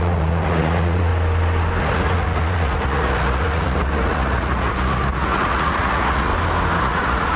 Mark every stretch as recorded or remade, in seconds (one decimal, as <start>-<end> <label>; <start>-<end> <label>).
0.0-1.1 remade; 1.1-1.8 recorded; 1.8-6.3 remade; 6.3-6.8 recorded; 6.8-7.4 remade